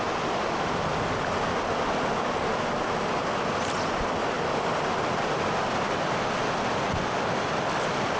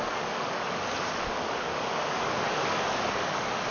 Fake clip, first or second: second